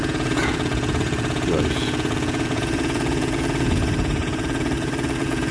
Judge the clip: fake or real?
fake